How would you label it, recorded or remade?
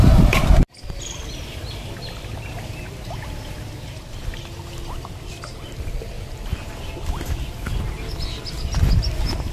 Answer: recorded